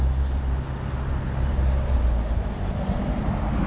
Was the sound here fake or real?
real